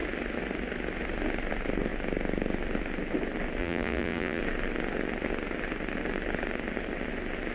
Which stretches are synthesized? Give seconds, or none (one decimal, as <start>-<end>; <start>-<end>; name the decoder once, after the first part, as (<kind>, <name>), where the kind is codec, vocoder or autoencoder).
3.6-4.4 (vocoder, BigVGAN v2)

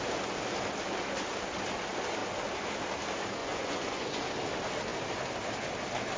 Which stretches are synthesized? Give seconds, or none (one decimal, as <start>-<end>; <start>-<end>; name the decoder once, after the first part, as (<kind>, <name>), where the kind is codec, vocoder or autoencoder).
3.4-4.2 (vocoder, Vocos)

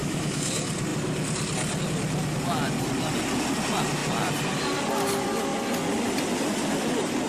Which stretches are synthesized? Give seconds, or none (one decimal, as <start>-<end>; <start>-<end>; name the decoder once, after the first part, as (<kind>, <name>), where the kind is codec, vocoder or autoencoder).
0.0-0.5 (autoencoder, DAC-VAE)

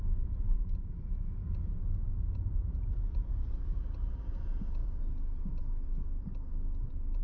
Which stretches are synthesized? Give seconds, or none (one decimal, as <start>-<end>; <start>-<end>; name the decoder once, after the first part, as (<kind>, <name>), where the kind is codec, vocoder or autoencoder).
0.0-7.2 (vocoder, BigVGAN v2)

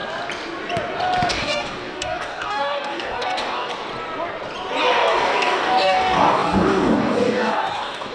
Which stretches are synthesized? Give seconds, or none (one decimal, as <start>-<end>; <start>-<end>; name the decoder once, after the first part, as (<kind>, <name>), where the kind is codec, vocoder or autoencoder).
1.3-3.7 (codec, DAC); 4.8-8.1